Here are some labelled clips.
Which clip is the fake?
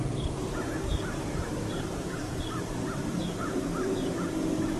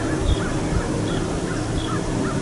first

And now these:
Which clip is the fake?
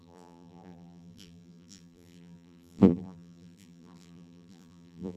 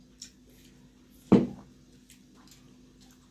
first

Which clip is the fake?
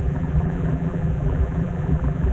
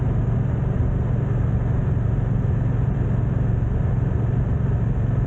first